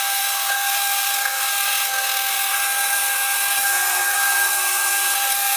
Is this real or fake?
fake